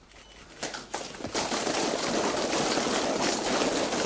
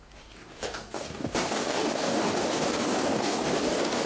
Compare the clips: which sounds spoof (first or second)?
second